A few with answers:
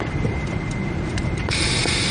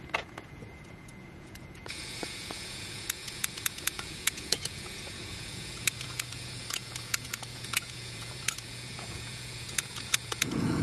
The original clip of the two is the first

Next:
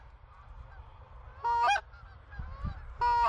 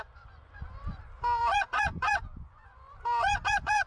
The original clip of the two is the first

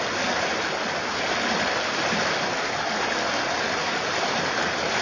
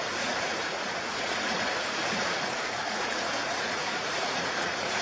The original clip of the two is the first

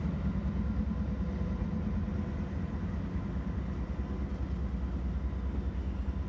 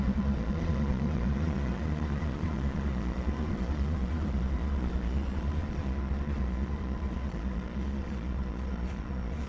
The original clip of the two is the first